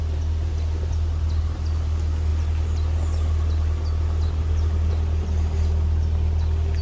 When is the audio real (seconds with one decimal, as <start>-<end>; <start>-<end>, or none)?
0.0-6.8